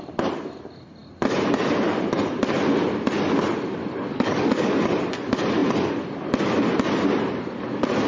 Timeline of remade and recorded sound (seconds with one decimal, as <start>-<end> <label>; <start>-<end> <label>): 0.0-4.1 recorded; 4.1-4.7 remade; 4.7-8.1 recorded